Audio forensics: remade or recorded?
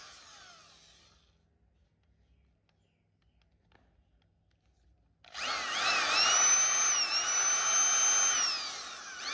recorded